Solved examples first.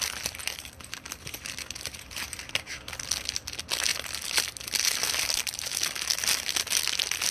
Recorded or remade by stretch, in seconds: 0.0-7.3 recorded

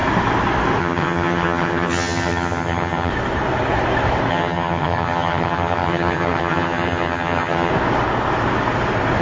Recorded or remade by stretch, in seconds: 0.0-0.8 recorded; 0.8-3.1 remade; 3.1-4.3 recorded; 4.3-7.7 remade; 7.7-9.2 recorded